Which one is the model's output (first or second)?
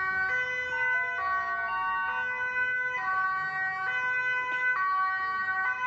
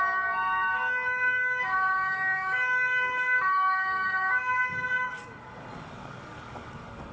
second